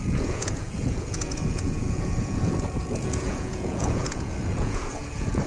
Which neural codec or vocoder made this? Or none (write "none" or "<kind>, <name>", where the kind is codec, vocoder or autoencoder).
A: vocoder, Vocos